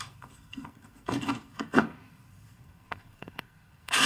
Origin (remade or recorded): remade